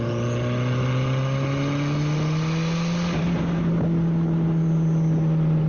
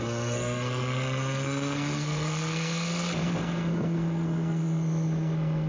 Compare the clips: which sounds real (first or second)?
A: first